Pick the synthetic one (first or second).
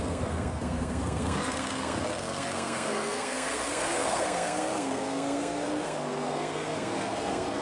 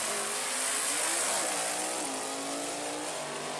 first